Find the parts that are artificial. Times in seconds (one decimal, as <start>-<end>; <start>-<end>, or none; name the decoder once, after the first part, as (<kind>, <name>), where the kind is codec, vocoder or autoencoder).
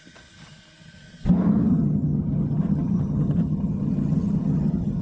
1.7-5.0 (vocoder, HiFi-GAN)